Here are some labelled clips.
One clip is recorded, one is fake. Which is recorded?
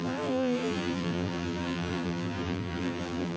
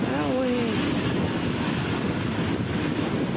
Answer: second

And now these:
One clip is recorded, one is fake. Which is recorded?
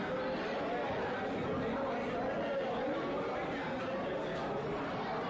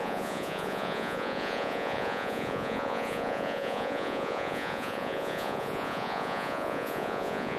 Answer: first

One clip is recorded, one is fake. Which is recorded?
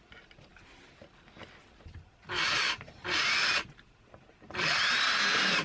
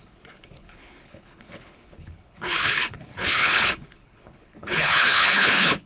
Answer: first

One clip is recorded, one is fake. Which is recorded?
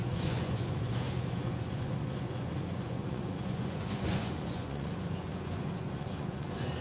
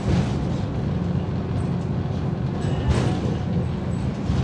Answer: second